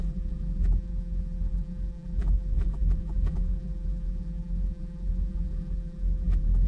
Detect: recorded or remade remade